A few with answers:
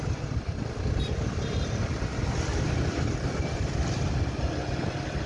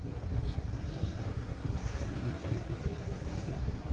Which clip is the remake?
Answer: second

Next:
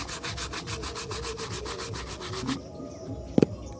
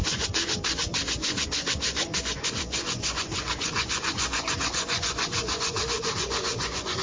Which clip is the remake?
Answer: second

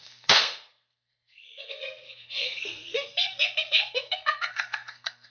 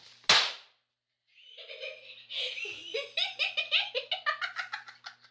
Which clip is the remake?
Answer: first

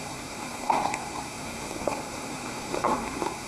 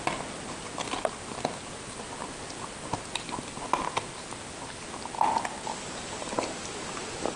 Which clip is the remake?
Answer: first